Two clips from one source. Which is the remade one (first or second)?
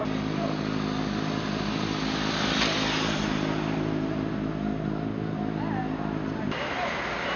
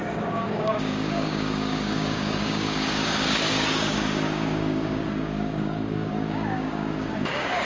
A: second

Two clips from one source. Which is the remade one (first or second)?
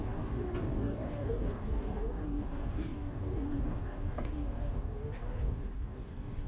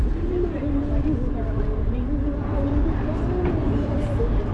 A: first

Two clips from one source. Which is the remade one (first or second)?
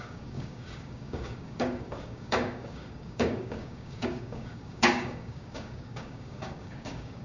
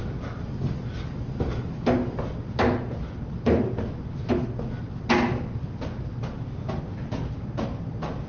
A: first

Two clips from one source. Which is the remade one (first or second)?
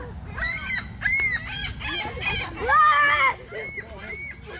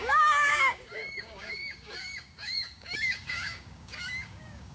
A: second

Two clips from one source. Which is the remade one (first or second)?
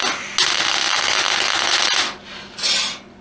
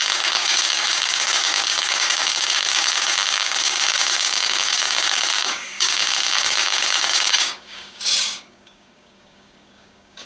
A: second